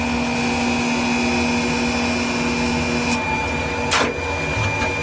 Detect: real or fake real